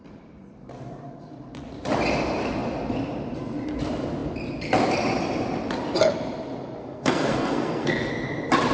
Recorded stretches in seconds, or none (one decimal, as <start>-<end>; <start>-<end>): 0.0-6.8; 8.1-8.7